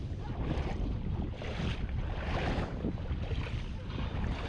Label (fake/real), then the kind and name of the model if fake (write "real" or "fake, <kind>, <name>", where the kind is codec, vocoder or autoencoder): real